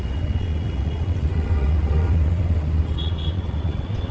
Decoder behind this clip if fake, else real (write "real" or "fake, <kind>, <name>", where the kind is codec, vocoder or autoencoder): fake, vocoder, WaveNeXt